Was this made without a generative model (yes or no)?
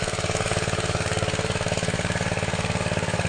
no